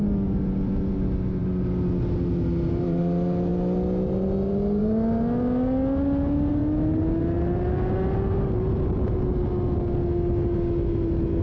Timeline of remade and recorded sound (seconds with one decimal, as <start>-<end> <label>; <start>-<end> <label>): 0.0-11.4 recorded